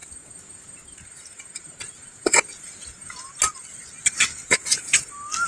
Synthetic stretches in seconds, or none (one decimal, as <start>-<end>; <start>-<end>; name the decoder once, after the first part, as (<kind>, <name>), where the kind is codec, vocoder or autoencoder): 0.0-3.3 (vocoder, Vocos); 4.4-5.1